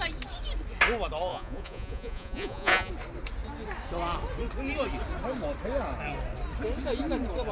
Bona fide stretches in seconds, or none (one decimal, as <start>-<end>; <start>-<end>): 0.0-1.3; 2.9-7.5